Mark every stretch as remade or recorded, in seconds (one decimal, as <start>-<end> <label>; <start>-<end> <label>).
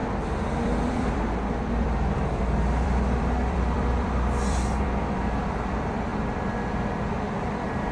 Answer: 0.0-6.1 remade; 6.1-7.1 recorded; 7.1-7.9 remade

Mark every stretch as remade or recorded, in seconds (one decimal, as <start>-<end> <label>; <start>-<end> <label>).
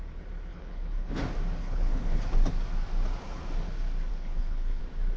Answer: 0.0-0.5 recorded; 0.5-1.2 remade; 1.2-1.6 recorded; 1.6-2.2 remade; 2.2-4.1 recorded; 4.1-4.8 remade; 4.8-5.2 recorded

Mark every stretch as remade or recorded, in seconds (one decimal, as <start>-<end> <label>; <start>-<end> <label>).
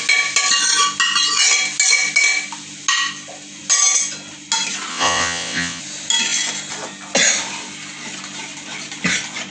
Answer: 0.0-4.9 recorded; 4.9-5.8 remade; 5.8-9.5 recorded